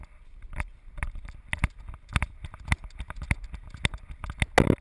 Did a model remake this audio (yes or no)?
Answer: no